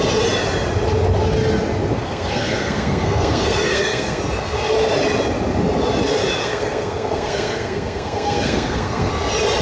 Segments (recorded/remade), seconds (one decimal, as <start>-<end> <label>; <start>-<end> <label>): 0.0-2.0 recorded; 2.0-4.2 remade; 4.2-6.4 recorded; 6.4-9.1 remade; 9.1-9.6 recorded